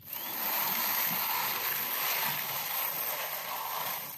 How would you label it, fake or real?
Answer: real